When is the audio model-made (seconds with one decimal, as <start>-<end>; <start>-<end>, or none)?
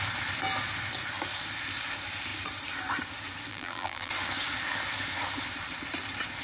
3.5-4.1